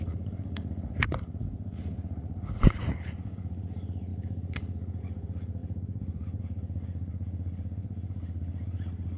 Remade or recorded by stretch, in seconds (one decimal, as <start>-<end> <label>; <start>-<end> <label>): 0.0-9.2 remade